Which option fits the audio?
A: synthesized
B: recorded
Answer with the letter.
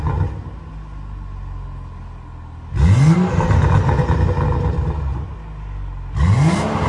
B